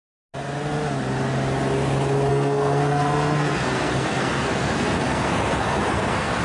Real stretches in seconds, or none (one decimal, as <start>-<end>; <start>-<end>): 0.0-2.3